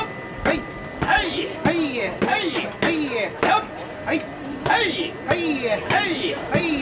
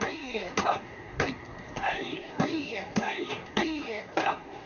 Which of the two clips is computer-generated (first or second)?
second